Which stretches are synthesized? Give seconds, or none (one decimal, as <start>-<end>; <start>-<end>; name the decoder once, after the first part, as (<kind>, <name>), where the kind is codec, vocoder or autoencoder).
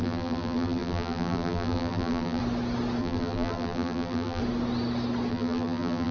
0.0-2.4 (vocoder, BigVGAN v2); 3.0-4.4; 5.3-6.1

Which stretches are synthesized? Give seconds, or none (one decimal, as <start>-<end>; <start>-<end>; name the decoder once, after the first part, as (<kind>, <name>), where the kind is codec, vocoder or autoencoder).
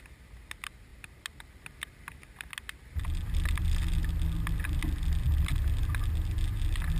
none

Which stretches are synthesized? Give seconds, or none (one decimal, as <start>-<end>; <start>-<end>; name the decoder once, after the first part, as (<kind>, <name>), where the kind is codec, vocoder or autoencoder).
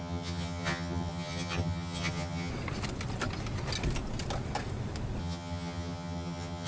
0.0-2.5 (vocoder, HiFi-GAN); 5.2-6.7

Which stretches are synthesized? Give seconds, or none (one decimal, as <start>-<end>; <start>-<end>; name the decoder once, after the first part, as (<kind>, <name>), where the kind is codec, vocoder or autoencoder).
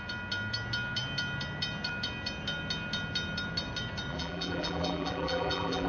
4.1-5.9 (vocoder, BigVGAN v2)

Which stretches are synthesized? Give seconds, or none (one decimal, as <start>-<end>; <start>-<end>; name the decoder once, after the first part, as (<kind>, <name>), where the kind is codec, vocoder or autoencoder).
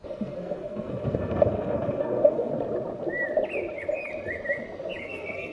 0.0-2.5 (codec, SNAC); 5.0-5.5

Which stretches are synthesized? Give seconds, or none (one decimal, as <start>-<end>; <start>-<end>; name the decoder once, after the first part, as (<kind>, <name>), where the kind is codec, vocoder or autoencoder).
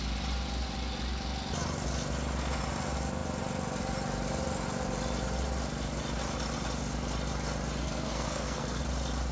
7.8-8.8 (codec, SNAC)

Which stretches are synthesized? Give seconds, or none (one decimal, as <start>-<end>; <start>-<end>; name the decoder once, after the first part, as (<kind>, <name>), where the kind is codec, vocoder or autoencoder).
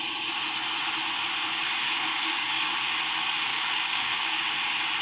2.1-2.7 (codec, DAC); 3.5-4.5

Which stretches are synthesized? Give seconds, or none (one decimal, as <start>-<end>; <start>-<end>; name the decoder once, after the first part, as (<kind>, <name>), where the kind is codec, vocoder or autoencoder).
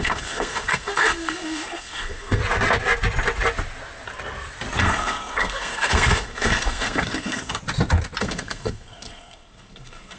0.0-2.4 (codec, SNAC); 4.8-7.6; 8.2-10.2